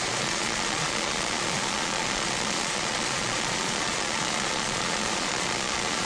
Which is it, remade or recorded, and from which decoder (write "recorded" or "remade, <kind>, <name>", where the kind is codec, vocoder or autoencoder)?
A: remade, vocoder, Vocos